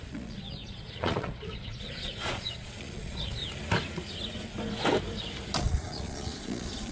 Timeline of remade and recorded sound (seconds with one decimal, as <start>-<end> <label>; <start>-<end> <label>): 0.0-3.4 remade; 3.4-5.6 recorded; 5.6-6.9 remade